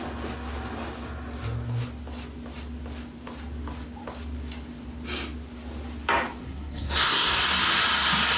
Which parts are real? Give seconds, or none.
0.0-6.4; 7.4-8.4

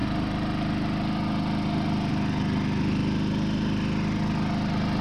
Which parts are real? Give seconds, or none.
0.0-5.0